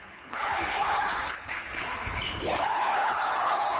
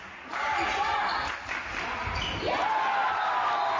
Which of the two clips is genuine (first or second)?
second